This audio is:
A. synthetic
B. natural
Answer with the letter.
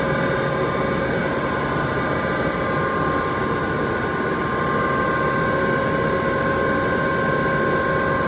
B